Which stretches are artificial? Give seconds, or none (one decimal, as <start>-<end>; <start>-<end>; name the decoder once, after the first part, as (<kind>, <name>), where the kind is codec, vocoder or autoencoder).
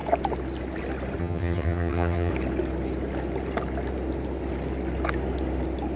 1.2-2.3 (vocoder, HiFi-GAN)